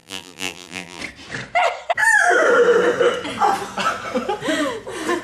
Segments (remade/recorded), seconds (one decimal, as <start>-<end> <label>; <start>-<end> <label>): 0.0-1.0 remade; 1.0-5.2 recorded